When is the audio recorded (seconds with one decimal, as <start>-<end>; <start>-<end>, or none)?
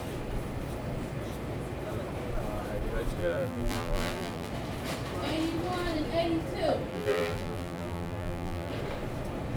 0.0-3.2; 4.5-6.9; 8.7-9.6